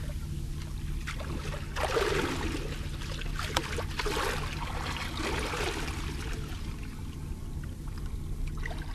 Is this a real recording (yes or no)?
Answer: yes